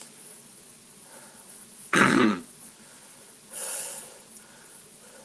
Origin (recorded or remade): remade